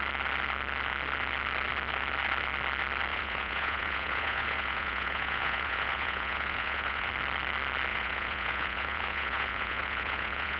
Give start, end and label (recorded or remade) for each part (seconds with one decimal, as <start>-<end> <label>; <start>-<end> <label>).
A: 0.0-3.1 recorded; 3.1-7.1 remade; 7.1-7.9 recorded; 7.9-10.6 remade